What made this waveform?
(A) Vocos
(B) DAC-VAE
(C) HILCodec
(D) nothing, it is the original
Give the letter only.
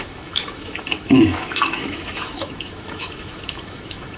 B